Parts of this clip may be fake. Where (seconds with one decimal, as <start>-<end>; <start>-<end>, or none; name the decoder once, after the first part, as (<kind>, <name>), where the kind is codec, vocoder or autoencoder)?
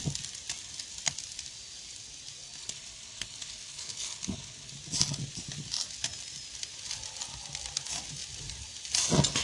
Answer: 2.6-4.7 (codec, HILCodec)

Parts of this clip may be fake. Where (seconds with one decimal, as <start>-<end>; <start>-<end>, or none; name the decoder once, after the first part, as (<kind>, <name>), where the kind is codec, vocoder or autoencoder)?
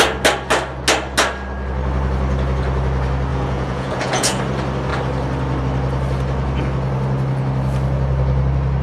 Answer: 3.3-4.4 (vocoder, Vocos)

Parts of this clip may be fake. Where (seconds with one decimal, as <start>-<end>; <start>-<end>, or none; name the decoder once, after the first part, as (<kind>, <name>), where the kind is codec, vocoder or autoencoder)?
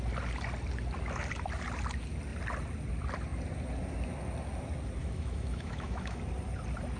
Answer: 5.0-6.2 (autoencoder, DAC-VAE)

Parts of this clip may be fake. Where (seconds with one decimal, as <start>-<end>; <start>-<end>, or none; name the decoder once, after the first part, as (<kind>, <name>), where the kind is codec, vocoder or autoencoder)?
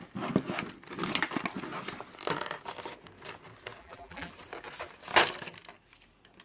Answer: 3.8-4.3 (vocoder, BigVGAN v2)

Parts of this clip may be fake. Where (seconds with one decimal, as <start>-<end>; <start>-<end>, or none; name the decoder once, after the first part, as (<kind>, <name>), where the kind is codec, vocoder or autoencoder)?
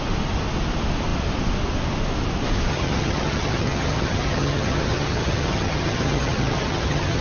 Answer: 2.7-7.2 (vocoder, HiFi-GAN)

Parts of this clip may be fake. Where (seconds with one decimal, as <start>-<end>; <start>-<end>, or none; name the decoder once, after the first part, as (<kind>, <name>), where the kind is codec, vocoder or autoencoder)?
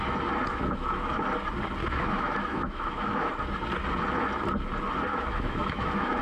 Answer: 0.5-1.1 (autoencoder, DAC-VAE); 1.8-3.3; 5.1-6.2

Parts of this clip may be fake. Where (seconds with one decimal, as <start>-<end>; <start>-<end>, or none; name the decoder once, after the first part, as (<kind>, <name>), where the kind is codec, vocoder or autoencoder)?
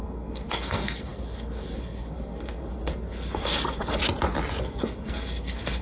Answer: 0.0-4.0 (codec, SNAC); 4.6-5.8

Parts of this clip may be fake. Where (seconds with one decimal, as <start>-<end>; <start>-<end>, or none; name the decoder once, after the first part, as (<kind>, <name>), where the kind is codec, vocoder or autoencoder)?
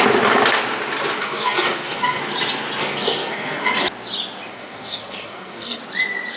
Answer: 1.2-2.2 (codec, SNAC); 2.8-3.7; 4.5-5.8